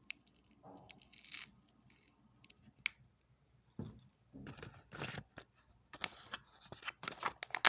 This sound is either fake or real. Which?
real